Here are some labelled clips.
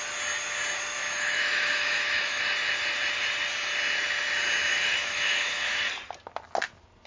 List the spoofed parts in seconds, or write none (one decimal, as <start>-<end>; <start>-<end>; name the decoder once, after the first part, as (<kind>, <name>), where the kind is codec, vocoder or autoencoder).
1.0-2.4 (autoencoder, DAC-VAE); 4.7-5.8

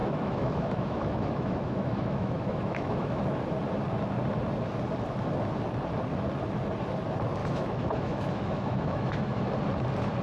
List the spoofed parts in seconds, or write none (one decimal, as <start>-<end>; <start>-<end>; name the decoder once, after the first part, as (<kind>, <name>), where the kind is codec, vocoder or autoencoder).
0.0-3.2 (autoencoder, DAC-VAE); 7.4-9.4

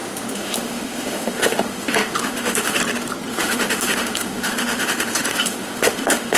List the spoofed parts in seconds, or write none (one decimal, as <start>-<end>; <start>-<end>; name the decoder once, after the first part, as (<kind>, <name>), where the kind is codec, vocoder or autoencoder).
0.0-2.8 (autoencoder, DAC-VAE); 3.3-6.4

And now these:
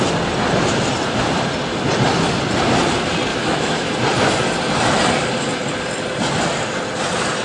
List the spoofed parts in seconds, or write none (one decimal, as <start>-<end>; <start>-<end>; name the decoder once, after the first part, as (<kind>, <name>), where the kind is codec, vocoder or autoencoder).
3.3-3.9 (autoencoder, DAC-VAE)